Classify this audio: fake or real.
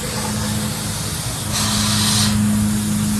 real